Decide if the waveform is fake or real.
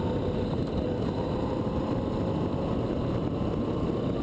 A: real